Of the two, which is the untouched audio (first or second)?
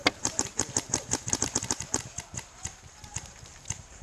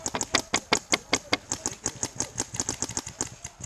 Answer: second